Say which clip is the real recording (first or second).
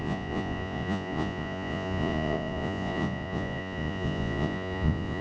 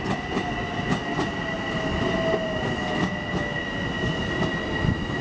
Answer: second